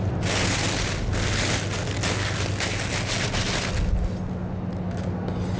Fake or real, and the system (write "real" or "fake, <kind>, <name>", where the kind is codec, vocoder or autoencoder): real